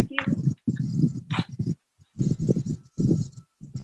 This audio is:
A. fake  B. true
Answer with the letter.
B